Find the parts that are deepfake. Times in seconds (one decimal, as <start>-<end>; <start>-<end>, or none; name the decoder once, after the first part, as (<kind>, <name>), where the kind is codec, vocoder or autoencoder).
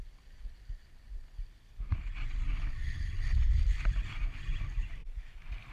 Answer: none